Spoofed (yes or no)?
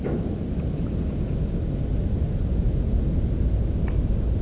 no